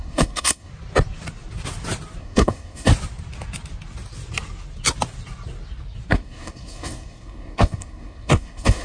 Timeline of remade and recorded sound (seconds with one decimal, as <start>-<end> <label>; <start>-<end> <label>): 0.0-0.7 remade; 0.7-2.2 recorded; 2.2-2.9 remade; 2.9-6.1 recorded; 6.1-8.8 remade